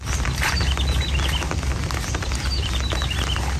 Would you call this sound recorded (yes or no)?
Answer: yes